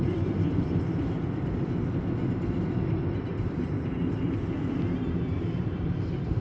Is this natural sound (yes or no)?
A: no